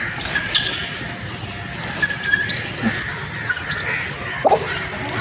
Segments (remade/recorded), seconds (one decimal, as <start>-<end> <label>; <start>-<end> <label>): 0.0-5.2 recorded

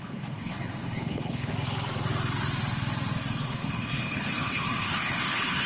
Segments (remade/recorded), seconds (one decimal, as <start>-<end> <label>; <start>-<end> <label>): 0.0-1.5 remade; 1.5-3.3 recorded; 3.3-5.7 remade

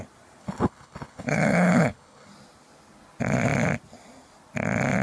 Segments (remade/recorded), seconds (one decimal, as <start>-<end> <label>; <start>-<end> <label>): 0.0-0.4 recorded; 0.4-2.3 remade; 2.3-5.0 recorded

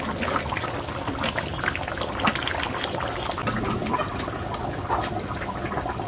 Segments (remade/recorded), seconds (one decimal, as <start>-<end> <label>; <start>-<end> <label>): 0.0-6.1 recorded

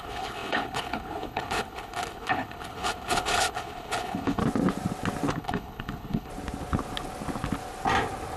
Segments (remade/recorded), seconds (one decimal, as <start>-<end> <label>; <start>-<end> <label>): 0.0-4.4 remade; 4.4-5.3 recorded; 5.3-6.3 remade; 6.3-8.4 recorded

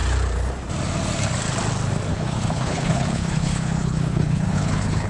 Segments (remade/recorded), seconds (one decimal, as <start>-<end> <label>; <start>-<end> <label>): 0.0-2.1 recorded; 2.1-5.1 remade